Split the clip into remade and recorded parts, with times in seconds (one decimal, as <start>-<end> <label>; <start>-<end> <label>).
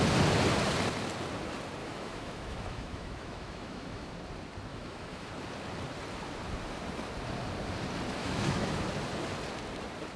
0.0-1.8 recorded; 1.8-4.1 remade; 4.1-4.7 recorded; 4.7-5.3 remade; 5.3-8.2 recorded; 8.2-8.7 remade; 8.7-10.2 recorded